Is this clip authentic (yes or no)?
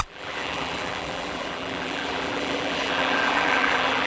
no